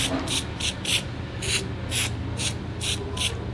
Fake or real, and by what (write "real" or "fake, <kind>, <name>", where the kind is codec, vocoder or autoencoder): real